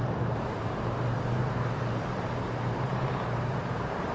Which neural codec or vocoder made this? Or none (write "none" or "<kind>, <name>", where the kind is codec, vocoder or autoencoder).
vocoder, BigVGAN v2